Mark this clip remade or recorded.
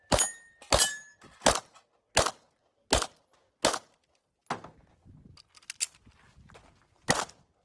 recorded